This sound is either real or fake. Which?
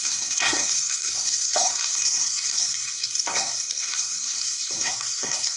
fake